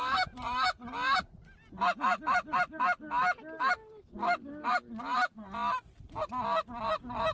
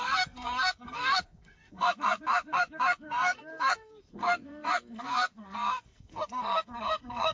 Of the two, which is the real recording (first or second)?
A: first